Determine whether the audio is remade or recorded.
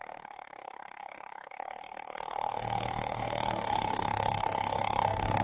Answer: remade